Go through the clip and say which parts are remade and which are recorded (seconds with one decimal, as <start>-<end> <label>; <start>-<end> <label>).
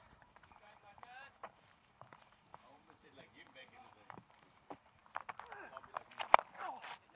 0.0-5.0 remade; 5.0-7.2 recorded